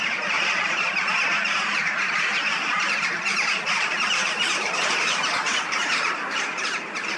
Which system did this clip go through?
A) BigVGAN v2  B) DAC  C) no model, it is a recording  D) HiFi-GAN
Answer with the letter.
A